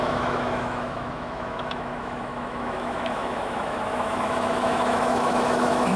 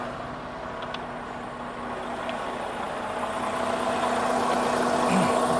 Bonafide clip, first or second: second